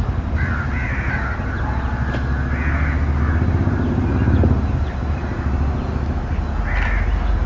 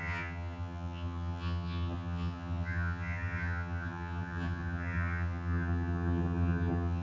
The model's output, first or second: second